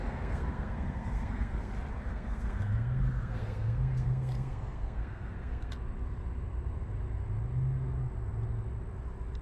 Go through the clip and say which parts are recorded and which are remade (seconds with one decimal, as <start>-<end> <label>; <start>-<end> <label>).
0.0-1.7 remade; 1.7-2.1 recorded; 2.1-5.7 remade; 5.7-9.4 recorded